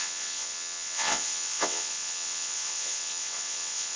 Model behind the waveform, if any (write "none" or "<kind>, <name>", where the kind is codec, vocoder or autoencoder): vocoder, WaveNeXt